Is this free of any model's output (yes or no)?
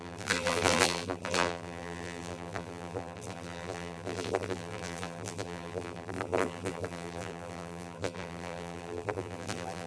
no